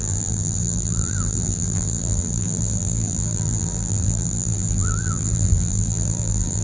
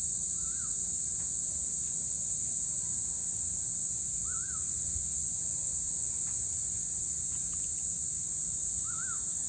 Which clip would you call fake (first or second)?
first